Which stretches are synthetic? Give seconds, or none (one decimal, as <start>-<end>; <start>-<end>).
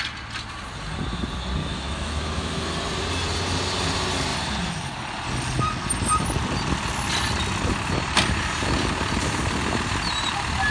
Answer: 1.6-2.6